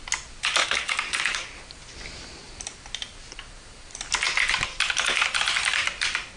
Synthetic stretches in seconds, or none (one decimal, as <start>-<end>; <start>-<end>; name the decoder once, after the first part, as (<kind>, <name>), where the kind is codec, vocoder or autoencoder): 0.6-1.5 (codec, DAC)